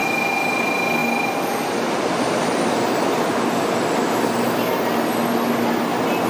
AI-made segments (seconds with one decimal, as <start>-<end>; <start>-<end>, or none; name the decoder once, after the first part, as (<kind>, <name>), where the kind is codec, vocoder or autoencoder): none